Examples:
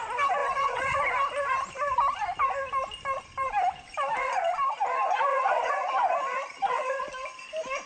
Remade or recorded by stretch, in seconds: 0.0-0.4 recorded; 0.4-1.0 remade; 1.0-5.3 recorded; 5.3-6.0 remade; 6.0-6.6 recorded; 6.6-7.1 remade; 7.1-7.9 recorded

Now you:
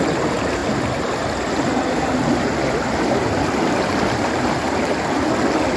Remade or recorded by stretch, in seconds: 0.0-5.8 recorded

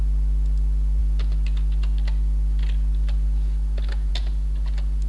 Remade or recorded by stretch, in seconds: 0.0-5.1 recorded

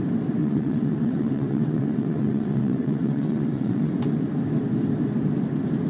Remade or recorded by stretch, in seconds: 0.0-0.4 recorded; 0.4-3.9 remade; 3.9-5.9 recorded

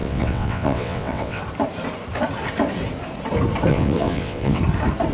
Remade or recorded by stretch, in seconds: 0.0-1.4 remade; 1.4-3.7 recorded; 3.7-4.6 remade; 4.6-5.1 recorded

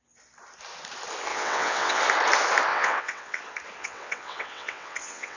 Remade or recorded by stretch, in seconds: 0.0-1.3 recorded; 1.3-2.0 remade; 2.0-2.7 recorded; 2.7-3.4 remade; 3.4-3.8 recorded; 3.8-5.4 remade

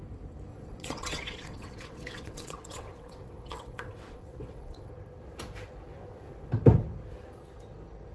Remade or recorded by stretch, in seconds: 0.0-0.5 recorded; 0.5-4.9 remade; 4.9-8.1 recorded